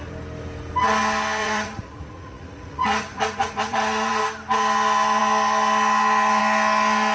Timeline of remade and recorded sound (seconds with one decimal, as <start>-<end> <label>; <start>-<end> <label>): 0.0-1.4 recorded; 1.4-4.2 remade; 4.2-7.1 recorded